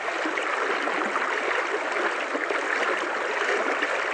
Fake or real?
real